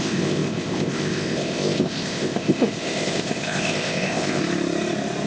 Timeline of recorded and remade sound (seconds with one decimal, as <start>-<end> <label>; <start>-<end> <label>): 0.0-4.4 remade; 4.4-5.3 recorded